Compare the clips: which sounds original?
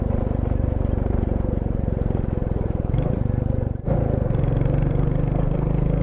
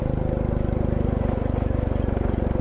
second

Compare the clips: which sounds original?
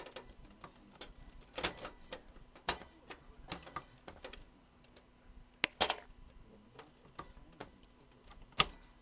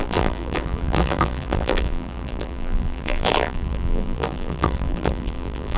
first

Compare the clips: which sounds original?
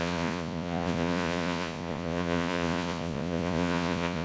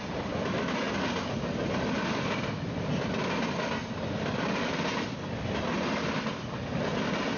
second